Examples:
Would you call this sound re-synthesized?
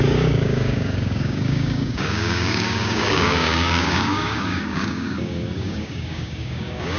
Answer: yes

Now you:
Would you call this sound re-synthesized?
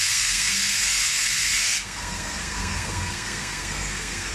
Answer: yes